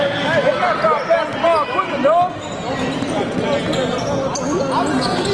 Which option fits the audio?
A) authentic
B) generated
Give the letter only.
A